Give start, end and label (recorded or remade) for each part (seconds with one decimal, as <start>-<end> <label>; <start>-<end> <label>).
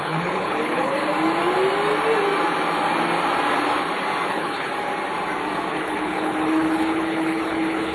0.0-1.0 remade; 1.0-4.3 recorded; 4.3-4.7 remade; 4.7-5.7 recorded; 5.7-7.9 remade